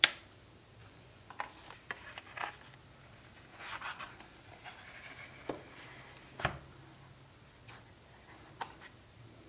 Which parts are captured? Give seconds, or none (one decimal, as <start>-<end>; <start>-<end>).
0.0-0.8; 1.3-3.5; 4.1-9.5